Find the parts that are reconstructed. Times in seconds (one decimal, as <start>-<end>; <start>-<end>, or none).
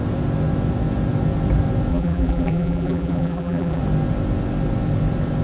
1.9-3.8